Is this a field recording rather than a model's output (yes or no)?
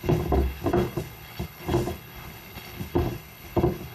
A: no